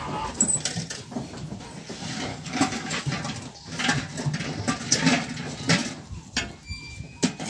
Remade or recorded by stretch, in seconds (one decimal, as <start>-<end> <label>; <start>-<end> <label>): 0.0-2.3 recorded; 2.3-2.9 remade; 2.9-7.5 recorded